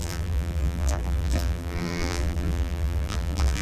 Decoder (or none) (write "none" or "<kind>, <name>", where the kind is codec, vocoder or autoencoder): vocoder, BigVGAN v2